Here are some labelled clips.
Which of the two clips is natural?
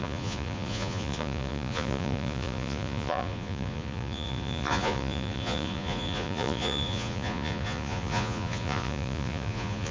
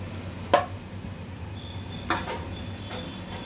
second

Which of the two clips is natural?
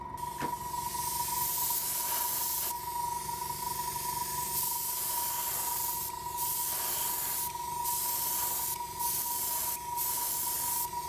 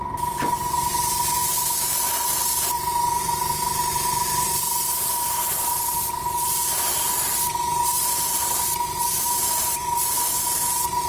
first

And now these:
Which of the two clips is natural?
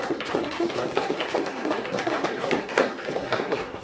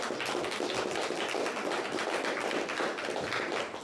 second